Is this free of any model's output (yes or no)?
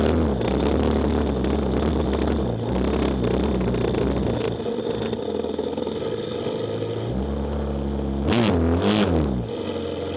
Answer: yes